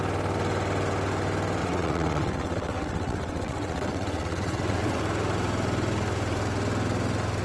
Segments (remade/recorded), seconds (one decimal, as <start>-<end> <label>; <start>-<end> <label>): 0.0-1.6 recorded; 1.6-5.0 remade; 5.0-7.4 recorded